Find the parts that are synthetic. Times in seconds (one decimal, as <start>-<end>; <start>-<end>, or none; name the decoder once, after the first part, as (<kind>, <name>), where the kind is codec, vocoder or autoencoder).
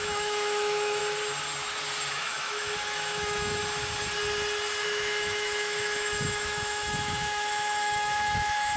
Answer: 0.0-1.0 (autoencoder, DAC-VAE); 2.1-3.6; 4.8-8.8